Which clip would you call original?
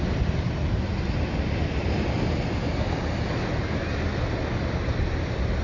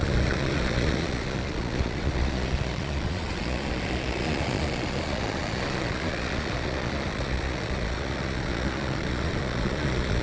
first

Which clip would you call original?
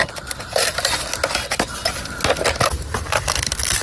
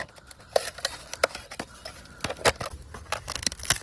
first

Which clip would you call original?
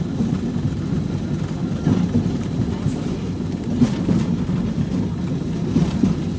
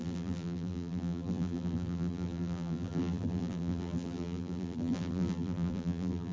first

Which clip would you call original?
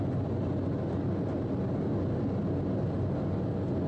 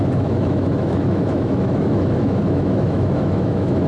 first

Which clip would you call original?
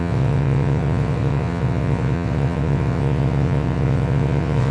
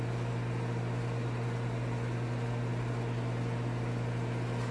second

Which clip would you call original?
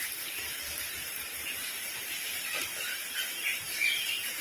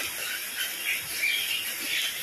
second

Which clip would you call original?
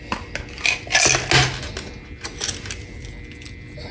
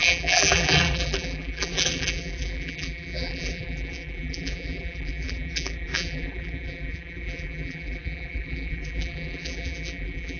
first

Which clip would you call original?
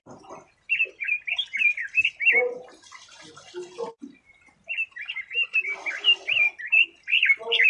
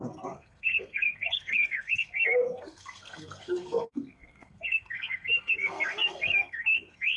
first